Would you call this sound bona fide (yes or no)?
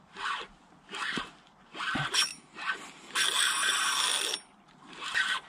yes